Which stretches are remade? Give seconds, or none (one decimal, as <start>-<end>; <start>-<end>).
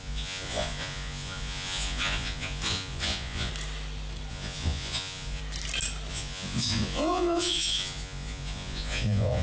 0.0-3.5; 4.3-5.4; 6.1-9.4